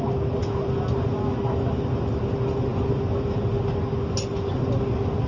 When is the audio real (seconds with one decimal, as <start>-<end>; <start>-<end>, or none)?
0.0-5.3